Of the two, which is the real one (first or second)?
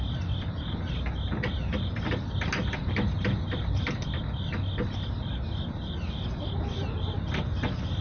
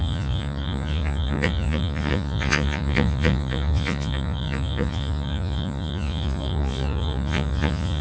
first